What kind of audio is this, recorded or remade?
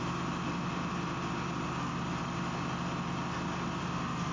recorded